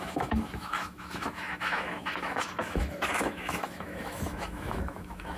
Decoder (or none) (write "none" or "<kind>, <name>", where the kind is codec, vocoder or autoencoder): autoencoder, DAC-VAE